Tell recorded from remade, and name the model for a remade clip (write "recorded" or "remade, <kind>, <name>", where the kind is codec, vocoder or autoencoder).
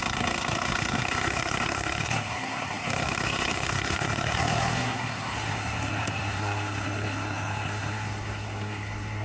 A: remade, codec, SNAC